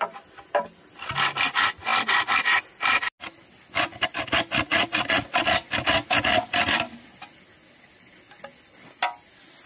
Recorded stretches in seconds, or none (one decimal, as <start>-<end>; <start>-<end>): 0.0-9.7